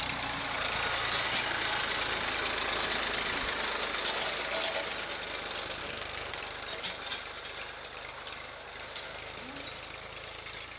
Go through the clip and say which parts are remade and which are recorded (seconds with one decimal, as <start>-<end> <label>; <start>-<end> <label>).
0.0-5.8 recorded; 5.8-6.4 remade; 6.4-10.8 recorded